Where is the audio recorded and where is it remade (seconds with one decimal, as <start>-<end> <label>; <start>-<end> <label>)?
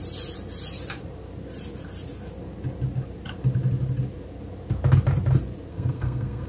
0.0-5.7 recorded; 5.7-6.5 remade